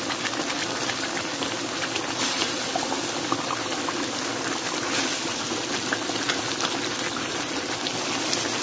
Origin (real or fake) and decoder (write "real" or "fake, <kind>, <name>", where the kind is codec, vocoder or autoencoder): real